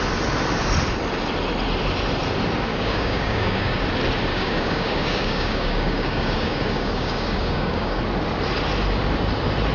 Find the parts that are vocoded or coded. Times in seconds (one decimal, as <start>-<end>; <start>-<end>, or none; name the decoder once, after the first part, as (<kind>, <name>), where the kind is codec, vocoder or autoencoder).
2.7-3.8 (codec, DAC); 4.3-8.0